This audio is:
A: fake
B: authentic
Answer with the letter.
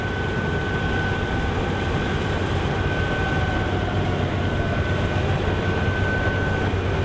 B